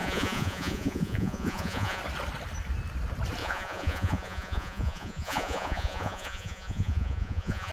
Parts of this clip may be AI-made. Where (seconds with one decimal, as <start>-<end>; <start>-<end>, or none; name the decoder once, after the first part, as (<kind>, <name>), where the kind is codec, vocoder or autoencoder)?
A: 0.0-2.0 (vocoder, Vocos); 3.4-7.7

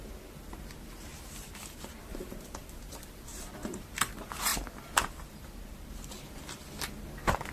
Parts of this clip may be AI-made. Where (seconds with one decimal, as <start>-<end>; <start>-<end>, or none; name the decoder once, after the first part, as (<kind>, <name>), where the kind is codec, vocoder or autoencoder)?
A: 1.1-2.8 (vocoder, BigVGAN v2); 3.3-4.1

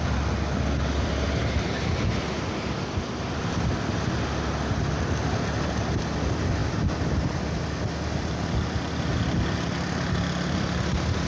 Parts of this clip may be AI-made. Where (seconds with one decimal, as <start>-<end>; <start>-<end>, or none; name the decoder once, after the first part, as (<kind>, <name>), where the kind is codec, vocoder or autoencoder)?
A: none

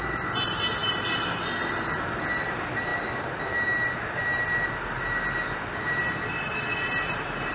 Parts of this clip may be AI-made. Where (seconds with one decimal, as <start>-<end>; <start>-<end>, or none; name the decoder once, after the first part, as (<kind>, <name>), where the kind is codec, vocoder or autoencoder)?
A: none

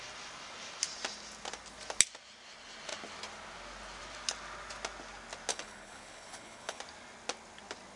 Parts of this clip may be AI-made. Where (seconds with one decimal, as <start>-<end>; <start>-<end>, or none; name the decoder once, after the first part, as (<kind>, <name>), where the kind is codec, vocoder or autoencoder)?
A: 5.5-6.8 (codec, HILCodec)

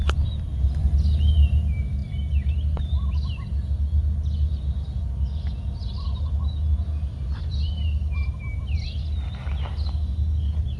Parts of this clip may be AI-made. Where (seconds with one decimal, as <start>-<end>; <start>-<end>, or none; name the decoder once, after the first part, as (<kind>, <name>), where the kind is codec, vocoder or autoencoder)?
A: none

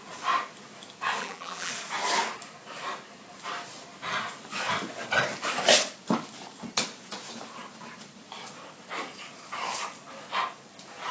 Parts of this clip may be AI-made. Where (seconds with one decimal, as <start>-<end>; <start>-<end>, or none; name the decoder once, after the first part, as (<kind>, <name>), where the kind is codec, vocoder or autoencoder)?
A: 1.2-1.7 (vocoder, BigVGAN v2)